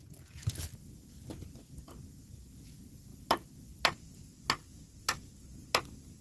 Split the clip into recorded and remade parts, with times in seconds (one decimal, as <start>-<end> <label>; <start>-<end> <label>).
0.0-6.2 recorded